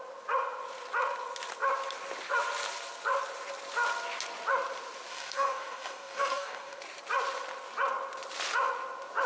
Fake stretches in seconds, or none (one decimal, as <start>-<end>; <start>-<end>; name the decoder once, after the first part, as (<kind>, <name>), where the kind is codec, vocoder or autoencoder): 5.1-6.8 (codec, DAC)